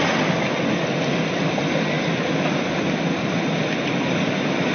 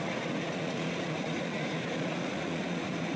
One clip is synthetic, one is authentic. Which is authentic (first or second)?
first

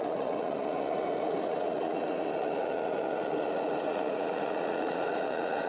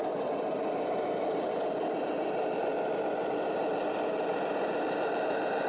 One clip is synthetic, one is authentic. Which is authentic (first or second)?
second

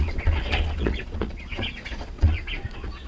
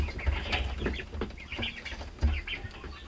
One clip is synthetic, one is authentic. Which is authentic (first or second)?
second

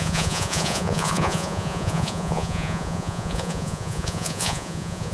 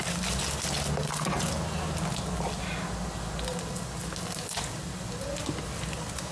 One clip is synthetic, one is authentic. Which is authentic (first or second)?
second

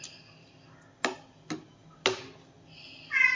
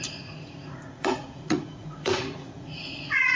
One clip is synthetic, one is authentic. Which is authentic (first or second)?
first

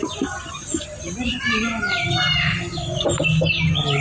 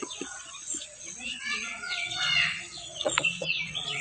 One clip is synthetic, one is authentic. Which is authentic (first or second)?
first